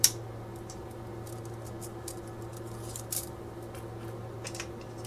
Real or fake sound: real